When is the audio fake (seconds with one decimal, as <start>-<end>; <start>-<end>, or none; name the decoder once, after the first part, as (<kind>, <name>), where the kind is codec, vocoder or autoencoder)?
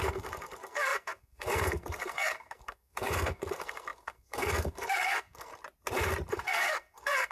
0.0-5.5 (codec, SNAC); 6.3-7.3